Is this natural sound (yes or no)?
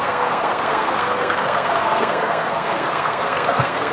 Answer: no